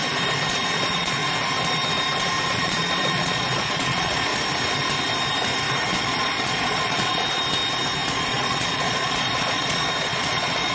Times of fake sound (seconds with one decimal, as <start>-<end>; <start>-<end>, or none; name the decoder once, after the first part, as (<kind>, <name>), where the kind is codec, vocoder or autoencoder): 0.5-1.2 (vocoder, Vocos); 2.5-4.3; 5.9-7.4; 8.1-10.7